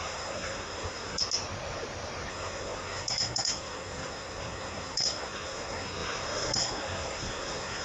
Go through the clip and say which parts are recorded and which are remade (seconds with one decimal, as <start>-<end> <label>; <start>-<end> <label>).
0.0-1.2 remade; 1.2-2.3 recorded; 2.3-7.8 remade